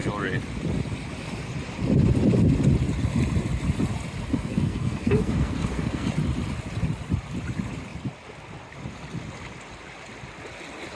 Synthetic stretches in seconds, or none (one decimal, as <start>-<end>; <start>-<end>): 4.3-6.1